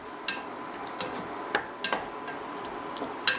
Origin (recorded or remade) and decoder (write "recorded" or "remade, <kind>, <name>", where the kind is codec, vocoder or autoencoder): recorded